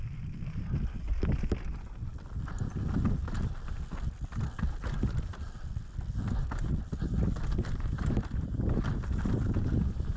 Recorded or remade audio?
recorded